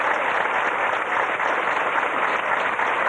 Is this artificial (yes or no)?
no